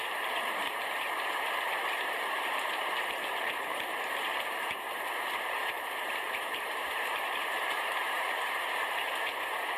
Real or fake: fake